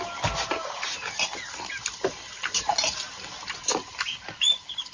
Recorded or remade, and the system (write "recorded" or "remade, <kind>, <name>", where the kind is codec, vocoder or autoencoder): recorded